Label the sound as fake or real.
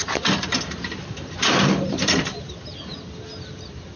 real